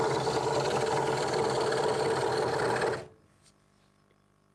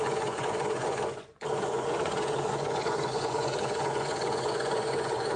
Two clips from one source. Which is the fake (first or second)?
second